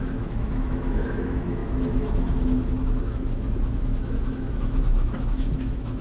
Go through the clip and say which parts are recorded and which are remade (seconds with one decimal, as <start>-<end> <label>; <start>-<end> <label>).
0.0-6.0 remade